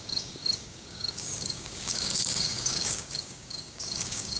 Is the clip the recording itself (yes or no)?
no